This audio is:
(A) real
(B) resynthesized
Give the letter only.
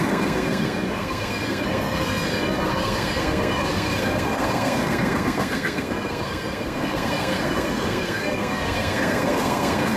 B